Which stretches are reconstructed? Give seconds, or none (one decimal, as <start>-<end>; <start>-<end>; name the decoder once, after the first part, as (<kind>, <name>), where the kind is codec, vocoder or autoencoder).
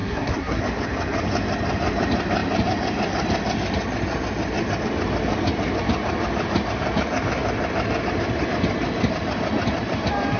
0.0-0.6 (codec, SNAC)